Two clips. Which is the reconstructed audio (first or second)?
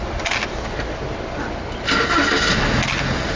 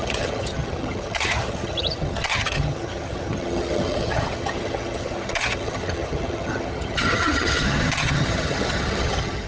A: second